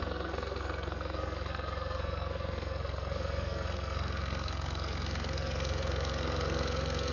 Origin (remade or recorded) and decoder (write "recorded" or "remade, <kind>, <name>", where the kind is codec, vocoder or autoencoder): remade, codec, SNAC